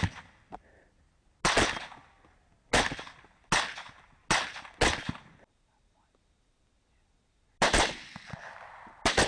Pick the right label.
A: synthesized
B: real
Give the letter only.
B